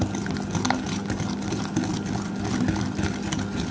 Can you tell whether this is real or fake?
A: real